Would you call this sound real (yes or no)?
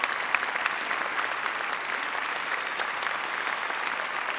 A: yes